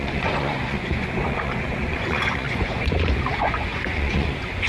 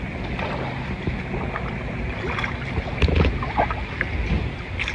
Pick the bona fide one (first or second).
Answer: second